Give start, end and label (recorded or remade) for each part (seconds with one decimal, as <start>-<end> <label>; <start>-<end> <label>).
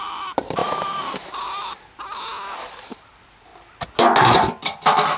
0.0-0.6 recorded; 0.6-1.3 remade; 1.3-5.2 recorded